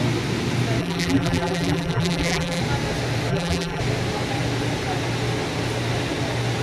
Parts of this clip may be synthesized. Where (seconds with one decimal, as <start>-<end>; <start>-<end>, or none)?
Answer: 0.8-2.6; 3.3-3.8